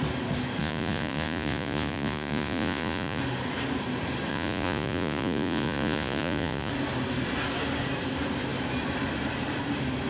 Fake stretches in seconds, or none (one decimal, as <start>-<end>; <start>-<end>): 0.6-3.2; 4.3-6.7